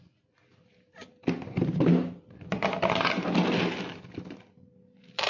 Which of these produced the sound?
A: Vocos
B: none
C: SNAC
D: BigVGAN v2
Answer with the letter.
B